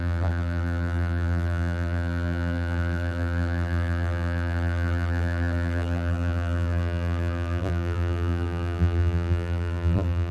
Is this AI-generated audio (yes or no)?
yes